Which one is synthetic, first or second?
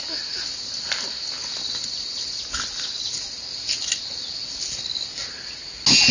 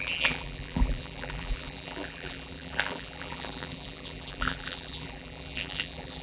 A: second